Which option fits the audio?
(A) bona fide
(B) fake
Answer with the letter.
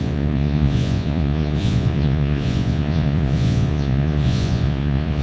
B